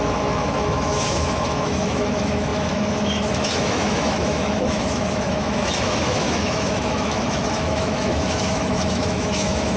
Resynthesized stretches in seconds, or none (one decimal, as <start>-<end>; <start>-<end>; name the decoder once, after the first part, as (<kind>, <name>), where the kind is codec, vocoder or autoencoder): 0.0-9.8 (autoencoder, DAC-VAE)

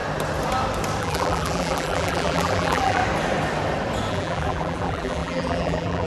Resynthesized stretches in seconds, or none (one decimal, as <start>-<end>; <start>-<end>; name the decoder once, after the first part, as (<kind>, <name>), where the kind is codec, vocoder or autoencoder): 1.0-3.0 (vocoder, BigVGAN v2); 4.1-6.1

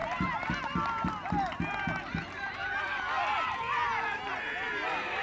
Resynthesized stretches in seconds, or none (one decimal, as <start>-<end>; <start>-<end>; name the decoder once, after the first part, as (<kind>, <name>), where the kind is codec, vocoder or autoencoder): 2.8-3.9 (vocoder, BigVGAN v2); 4.7-5.2

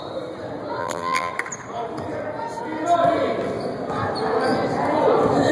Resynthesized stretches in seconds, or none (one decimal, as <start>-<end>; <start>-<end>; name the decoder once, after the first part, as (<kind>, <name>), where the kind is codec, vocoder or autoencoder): 0.8-1.3 (vocoder, BigVGAN v2)

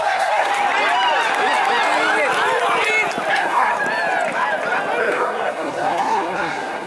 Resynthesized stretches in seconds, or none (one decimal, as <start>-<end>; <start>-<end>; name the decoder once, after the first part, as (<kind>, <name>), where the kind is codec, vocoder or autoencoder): 0.0-0.5 (codec, SNAC); 3.3-3.7; 5.0-6.9